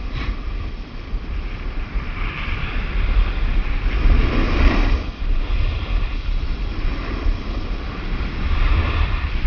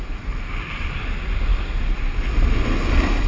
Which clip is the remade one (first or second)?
first